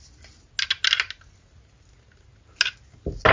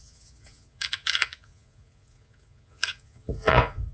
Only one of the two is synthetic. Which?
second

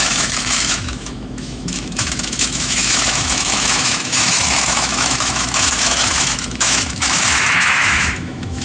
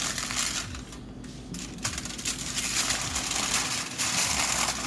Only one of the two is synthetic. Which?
first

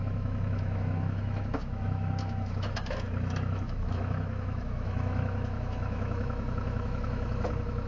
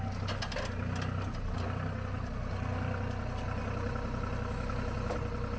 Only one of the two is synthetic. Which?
first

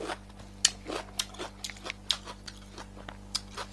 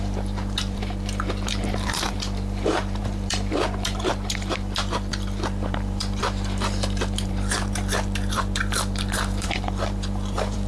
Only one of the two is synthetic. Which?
second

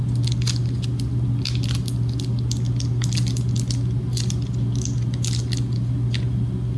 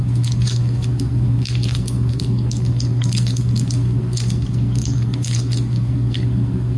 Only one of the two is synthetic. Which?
second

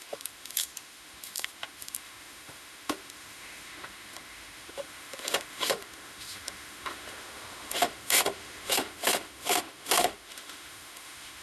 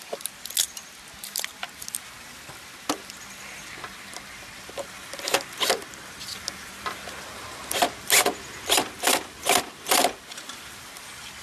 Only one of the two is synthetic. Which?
first